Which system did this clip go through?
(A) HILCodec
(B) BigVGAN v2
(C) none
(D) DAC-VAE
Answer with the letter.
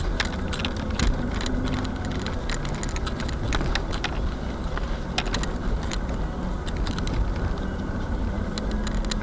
C